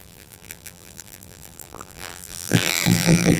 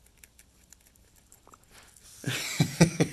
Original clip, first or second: second